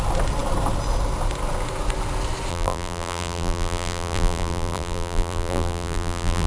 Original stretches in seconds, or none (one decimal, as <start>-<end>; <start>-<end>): 0.0-2.5